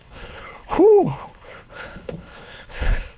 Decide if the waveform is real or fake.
fake